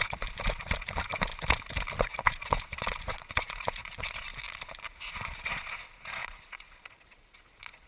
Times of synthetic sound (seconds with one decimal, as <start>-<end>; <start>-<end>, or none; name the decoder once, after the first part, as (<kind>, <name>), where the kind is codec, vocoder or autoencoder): 0.0-1.3 (vocoder, Vocos); 1.9-4.3; 5.0-7.9